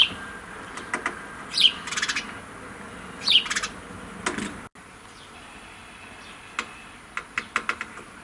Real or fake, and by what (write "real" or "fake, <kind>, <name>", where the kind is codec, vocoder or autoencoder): real